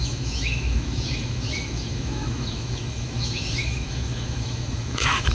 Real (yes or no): no